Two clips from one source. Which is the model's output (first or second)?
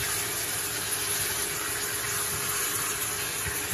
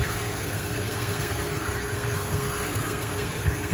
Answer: second